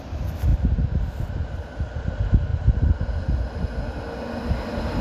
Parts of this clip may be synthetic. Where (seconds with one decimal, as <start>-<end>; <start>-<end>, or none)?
none